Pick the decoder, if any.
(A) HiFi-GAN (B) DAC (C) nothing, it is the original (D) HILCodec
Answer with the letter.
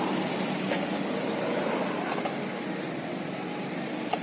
C